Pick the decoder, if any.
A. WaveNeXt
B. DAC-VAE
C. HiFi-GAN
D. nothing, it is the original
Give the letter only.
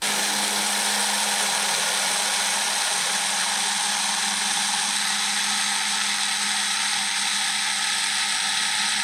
D